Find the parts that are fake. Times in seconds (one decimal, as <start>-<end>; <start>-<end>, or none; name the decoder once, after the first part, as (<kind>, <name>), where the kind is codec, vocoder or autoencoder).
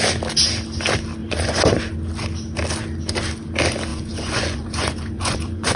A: 1.2-1.8 (vocoder, Vocos); 3.9-5.8